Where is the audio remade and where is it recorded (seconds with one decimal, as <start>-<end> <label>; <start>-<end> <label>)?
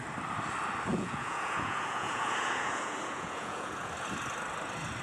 0.0-0.9 recorded; 0.9-3.9 remade; 3.9-5.0 recorded